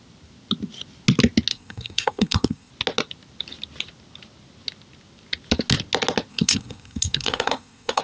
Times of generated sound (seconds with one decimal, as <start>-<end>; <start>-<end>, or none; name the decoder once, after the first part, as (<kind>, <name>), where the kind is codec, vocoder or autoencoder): 1.5-2.7 (codec, SNAC); 6.3-8.0